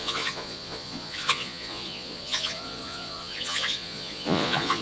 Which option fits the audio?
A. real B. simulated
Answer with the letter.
B